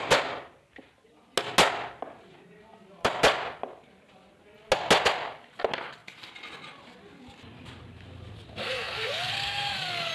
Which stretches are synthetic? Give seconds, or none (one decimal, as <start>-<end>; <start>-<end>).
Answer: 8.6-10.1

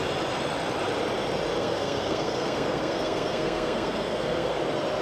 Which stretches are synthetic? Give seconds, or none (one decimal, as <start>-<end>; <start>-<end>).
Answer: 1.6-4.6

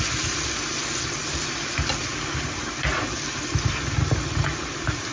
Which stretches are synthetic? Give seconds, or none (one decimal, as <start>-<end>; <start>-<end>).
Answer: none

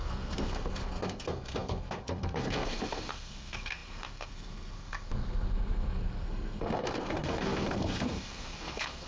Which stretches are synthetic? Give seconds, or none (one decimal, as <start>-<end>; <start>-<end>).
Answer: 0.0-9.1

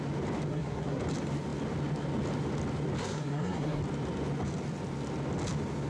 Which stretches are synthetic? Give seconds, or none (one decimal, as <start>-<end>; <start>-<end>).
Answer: 0.5-1.0; 3.0-3.8

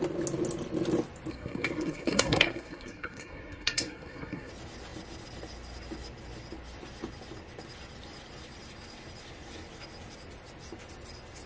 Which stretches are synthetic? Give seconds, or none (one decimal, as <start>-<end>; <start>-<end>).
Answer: 1.3-4.5

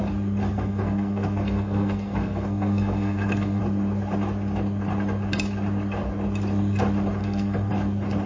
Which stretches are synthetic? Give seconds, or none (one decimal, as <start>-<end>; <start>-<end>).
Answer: 0.5-3.6; 7.2-7.7

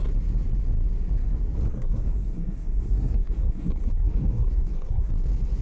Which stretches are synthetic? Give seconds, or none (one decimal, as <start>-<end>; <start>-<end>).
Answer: 1.7-5.1